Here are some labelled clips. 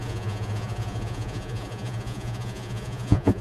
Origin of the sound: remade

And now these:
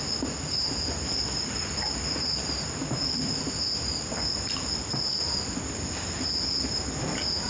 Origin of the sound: recorded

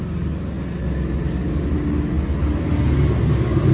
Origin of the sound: recorded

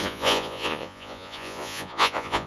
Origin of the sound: remade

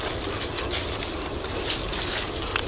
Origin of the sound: recorded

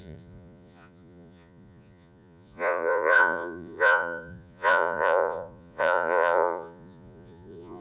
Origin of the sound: remade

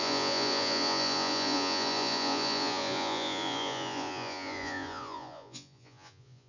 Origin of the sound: remade